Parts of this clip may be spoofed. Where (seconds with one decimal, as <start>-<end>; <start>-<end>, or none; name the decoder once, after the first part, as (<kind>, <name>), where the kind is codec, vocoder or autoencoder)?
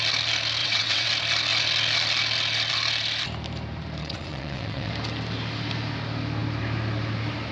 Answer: 0.6-1.1 (vocoder, WaveNeXt); 4.0-4.9